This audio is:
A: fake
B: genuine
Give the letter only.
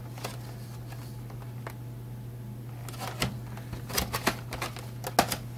B